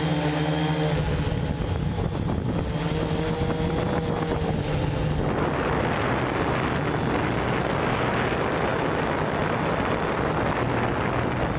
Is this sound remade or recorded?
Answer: recorded